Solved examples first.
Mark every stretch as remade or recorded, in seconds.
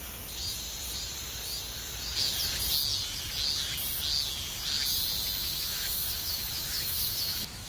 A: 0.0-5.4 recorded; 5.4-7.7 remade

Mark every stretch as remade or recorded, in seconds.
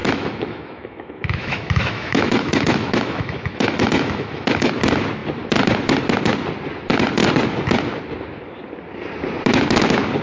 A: 0.0-4.7 remade; 4.7-10.2 recorded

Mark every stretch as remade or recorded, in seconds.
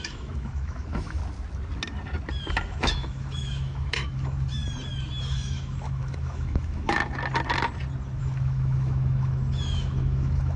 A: 0.0-1.2 remade; 1.2-2.5 recorded; 2.5-4.6 remade; 4.6-5.2 recorded; 5.2-7.0 remade; 7.0-8.2 recorded; 8.2-10.6 remade